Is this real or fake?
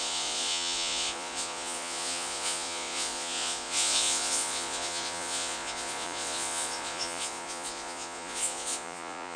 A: fake